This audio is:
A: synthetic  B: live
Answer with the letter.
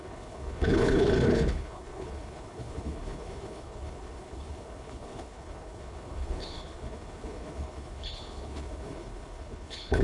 A